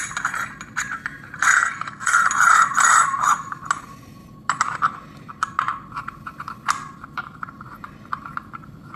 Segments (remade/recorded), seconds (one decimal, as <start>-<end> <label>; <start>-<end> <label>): 0.0-1.5 recorded; 1.5-2.2 remade; 2.2-9.0 recorded